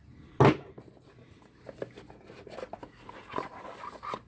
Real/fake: real